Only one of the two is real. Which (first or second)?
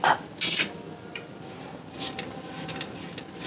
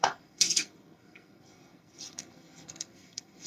first